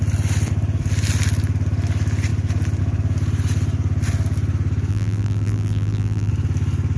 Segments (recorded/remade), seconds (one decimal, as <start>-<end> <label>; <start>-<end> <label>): 0.0-4.9 recorded; 4.9-6.3 remade; 6.3-7.0 recorded